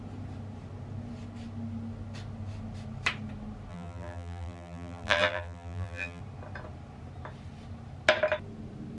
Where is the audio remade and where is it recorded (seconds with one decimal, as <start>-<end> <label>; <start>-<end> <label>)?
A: 0.0-3.7 recorded; 3.7-6.2 remade; 6.2-9.0 recorded